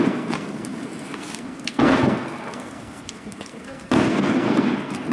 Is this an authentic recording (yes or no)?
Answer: no